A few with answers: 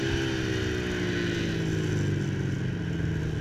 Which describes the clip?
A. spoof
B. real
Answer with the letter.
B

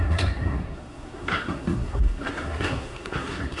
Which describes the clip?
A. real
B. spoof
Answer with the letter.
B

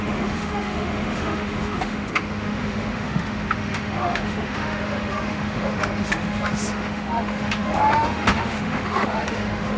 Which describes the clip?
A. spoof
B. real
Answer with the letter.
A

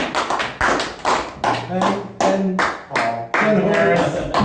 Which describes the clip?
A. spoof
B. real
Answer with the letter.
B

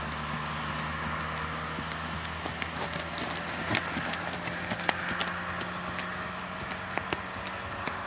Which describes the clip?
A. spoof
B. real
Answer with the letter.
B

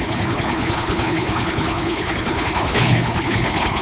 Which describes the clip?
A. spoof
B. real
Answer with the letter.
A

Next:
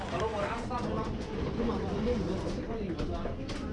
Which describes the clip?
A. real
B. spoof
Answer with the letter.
A